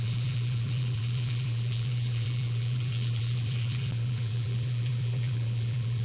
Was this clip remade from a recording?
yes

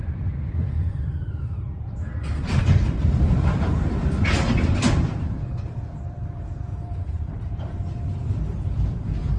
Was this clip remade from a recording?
yes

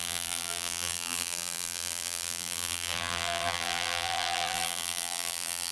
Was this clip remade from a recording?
yes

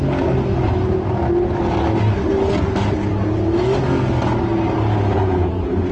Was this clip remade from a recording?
no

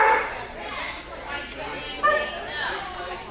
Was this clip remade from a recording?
no